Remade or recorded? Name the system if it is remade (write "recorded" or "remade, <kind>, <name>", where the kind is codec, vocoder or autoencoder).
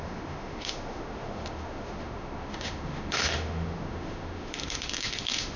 remade, autoencoder, DAC-VAE